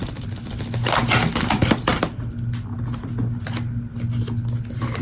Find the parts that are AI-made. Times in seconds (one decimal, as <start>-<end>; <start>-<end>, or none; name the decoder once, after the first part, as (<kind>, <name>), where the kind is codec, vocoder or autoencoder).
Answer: none